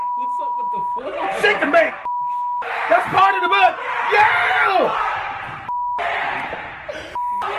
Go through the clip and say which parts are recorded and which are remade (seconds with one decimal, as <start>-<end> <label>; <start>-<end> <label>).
0.0-1.9 remade; 1.9-7.6 recorded